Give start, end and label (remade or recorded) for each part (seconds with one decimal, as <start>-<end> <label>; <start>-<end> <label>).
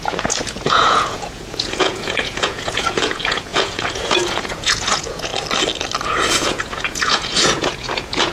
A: 0.0-5.3 remade; 5.3-6.3 recorded; 6.3-8.3 remade